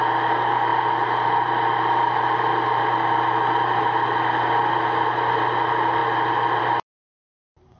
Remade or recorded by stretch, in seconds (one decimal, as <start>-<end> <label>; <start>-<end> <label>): 0.0-7.8 recorded